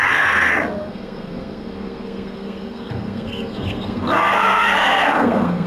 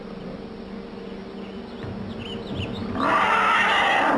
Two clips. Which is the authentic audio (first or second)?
second